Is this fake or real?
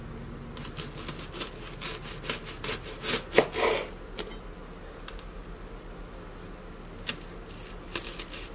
real